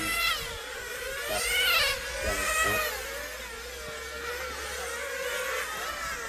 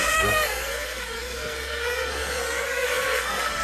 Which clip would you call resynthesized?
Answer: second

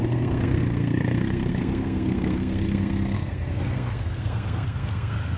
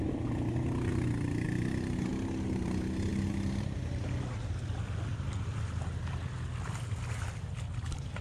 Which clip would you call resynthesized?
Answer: first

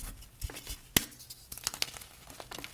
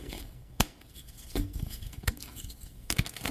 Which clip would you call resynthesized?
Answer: second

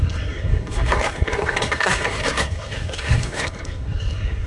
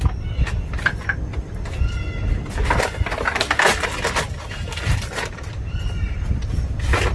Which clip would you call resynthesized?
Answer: first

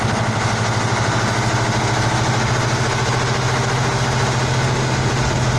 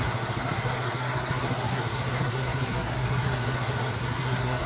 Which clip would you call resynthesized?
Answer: second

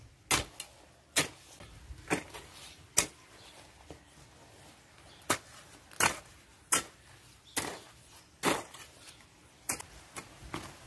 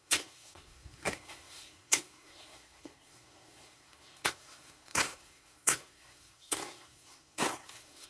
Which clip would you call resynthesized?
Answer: second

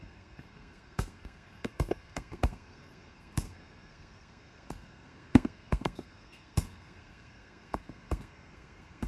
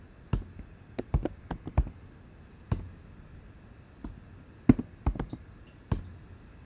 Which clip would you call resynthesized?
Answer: first